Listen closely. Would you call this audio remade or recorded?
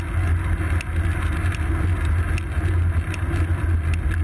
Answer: recorded